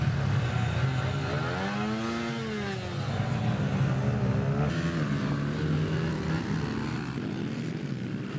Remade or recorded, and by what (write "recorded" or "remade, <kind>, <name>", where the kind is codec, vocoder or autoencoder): recorded